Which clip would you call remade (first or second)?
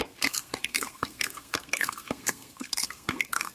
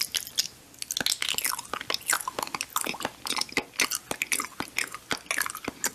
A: first